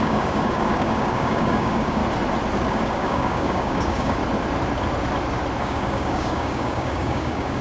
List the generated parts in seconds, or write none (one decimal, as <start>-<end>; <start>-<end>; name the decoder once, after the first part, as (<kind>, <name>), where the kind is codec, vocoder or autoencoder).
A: 0.0-2.0 (codec, DAC); 2.7-4.2; 5.6-7.6